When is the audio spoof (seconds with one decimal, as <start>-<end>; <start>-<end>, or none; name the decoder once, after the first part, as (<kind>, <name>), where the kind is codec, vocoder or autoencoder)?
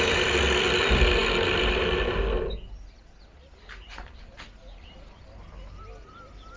none